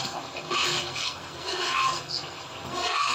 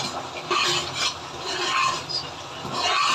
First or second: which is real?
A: second